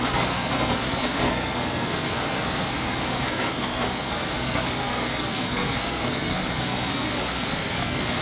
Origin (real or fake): fake